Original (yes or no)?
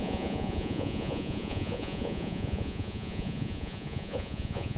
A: no